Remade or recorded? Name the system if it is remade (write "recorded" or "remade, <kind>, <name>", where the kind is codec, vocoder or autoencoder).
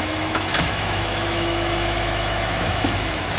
remade, autoencoder, DAC-VAE